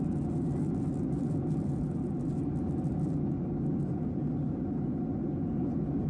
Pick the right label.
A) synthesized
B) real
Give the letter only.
B